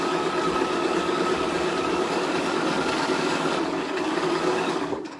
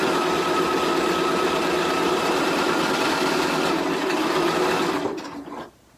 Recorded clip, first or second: second